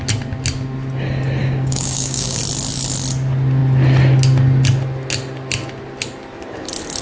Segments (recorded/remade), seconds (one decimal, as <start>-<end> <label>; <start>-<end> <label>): 0.0-1.4 recorded; 1.4-2.4 remade; 2.4-7.0 recorded